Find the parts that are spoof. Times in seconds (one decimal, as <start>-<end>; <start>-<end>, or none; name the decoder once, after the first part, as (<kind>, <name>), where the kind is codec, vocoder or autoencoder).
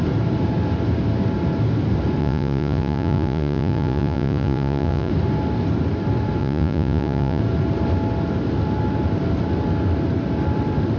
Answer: 2.2-5.1 (vocoder, Vocos); 6.4-7.4